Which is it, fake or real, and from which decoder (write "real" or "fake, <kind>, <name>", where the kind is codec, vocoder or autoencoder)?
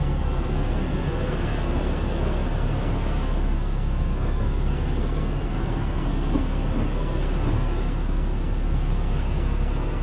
fake, codec, SNAC